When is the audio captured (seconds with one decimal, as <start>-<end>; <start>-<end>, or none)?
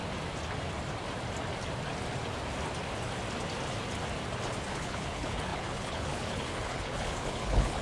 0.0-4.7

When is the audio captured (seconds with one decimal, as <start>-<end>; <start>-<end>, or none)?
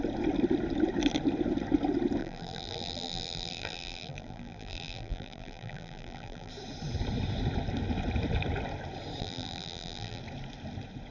0.0-2.2; 6.5-9.2; 10.2-11.1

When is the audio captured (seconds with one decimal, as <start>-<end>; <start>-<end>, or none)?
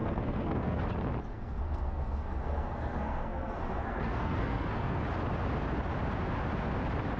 0.8-1.3; 5.0-7.2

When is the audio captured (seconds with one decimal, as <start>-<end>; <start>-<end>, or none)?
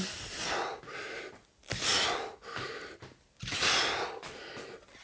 0.0-5.0